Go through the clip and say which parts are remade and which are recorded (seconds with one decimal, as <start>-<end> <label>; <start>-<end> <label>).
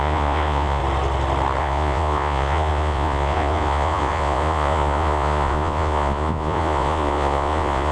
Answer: 0.0-0.8 remade; 0.8-1.6 recorded; 1.6-7.9 remade